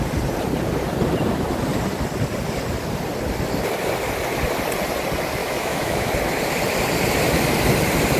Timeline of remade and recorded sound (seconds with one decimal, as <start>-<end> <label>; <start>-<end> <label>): 0.0-5.4 recorded; 5.4-6.1 remade; 6.1-8.2 recorded